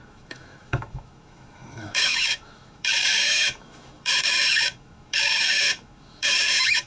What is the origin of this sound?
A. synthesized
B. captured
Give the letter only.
A